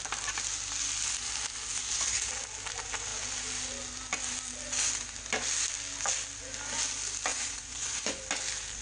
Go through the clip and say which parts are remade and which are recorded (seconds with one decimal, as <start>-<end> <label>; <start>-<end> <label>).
0.0-7.3 recorded; 7.3-8.2 remade; 8.2-8.8 recorded